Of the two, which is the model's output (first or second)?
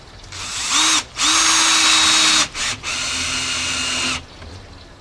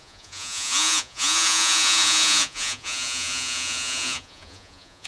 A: second